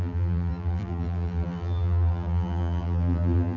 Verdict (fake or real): fake